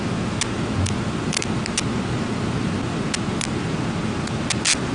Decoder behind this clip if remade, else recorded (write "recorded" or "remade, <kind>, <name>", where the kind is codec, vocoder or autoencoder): recorded